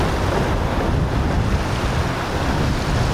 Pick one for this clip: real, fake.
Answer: real